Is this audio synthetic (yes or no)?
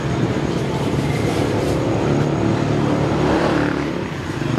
yes